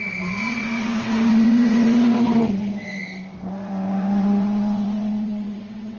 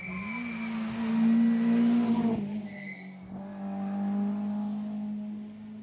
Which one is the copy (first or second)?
first